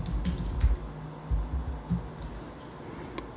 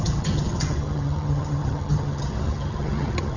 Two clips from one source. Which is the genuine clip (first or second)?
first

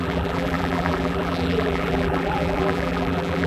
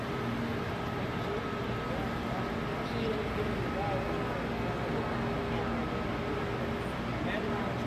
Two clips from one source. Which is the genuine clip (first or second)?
second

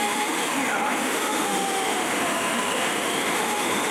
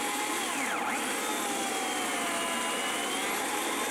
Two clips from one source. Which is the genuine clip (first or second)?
second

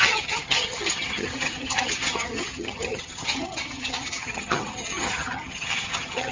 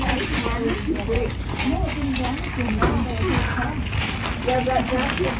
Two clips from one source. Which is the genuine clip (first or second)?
second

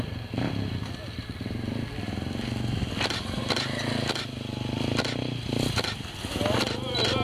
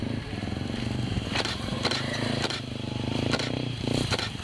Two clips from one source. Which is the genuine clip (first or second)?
first